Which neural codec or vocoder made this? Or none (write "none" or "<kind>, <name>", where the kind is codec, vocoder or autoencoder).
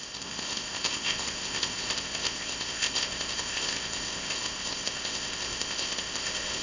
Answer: codec, ZipCodec